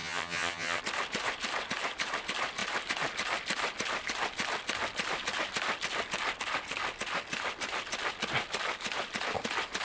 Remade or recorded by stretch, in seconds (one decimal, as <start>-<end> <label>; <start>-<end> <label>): 0.0-0.8 remade; 0.8-9.8 recorded